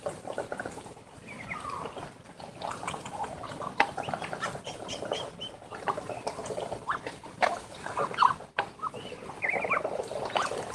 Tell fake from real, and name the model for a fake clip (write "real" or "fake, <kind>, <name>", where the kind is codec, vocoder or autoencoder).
fake, vocoder, BigVGAN v2